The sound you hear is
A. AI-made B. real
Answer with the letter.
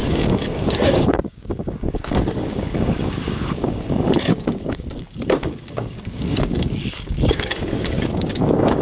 A